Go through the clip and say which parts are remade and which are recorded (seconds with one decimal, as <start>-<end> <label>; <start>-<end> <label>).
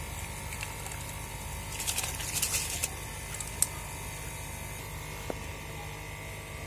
0.0-6.7 recorded